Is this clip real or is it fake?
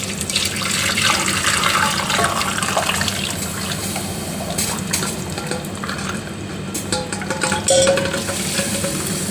real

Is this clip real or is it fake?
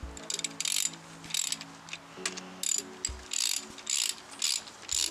real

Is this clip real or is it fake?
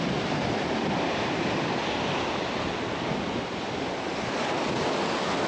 real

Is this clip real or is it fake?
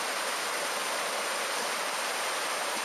real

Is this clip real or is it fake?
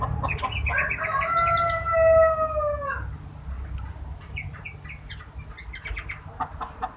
real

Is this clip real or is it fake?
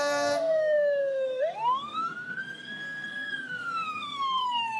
fake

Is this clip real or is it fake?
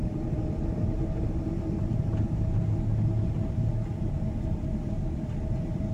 real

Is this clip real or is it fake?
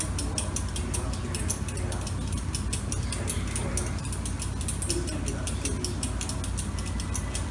real